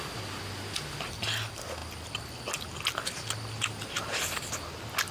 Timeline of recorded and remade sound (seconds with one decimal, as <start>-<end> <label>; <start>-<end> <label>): 0.0-5.1 recorded